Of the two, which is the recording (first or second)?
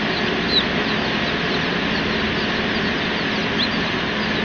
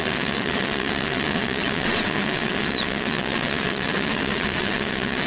first